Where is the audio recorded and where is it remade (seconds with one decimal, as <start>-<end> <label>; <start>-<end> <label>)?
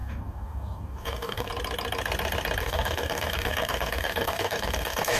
0.0-1.5 remade; 1.5-2.6 recorded; 2.6-5.2 remade